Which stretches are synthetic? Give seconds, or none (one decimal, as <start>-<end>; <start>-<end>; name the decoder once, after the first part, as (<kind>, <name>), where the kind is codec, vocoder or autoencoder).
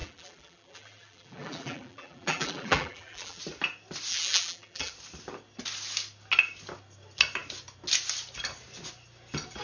0.0-3.4 (vocoder, BigVGAN v2); 4.1-4.9